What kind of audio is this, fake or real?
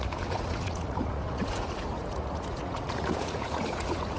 fake